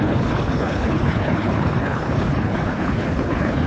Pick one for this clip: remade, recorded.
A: remade